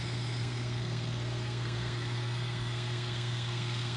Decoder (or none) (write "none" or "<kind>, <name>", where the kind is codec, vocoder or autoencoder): codec, SNAC